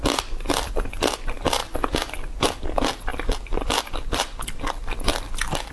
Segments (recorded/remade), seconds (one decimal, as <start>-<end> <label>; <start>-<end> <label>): 0.0-5.7 recorded